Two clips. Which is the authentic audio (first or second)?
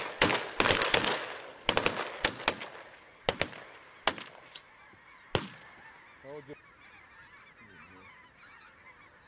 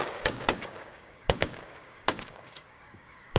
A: first